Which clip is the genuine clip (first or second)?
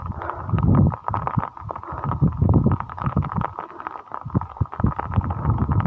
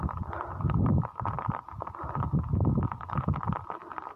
first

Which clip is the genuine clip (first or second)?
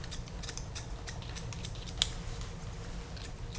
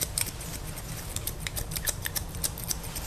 first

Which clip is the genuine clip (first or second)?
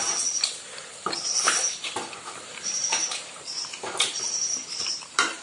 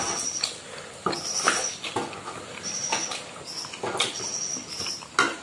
second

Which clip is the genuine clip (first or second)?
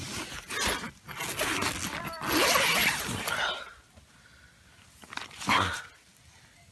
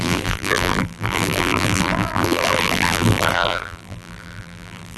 first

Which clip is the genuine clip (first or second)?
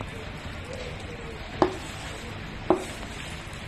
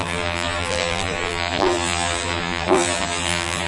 first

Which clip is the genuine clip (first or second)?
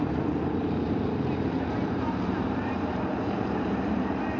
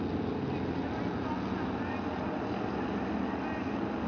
second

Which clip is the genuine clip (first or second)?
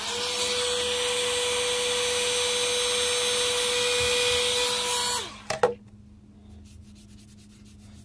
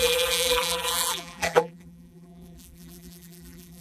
first